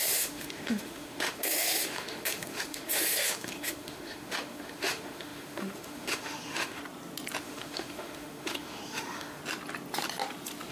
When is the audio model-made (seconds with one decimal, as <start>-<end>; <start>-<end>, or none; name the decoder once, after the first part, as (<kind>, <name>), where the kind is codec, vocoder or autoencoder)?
0.0-6.8 (autoencoder, DAC-VAE); 7.4-9.4